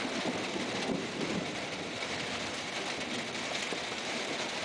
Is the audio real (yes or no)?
yes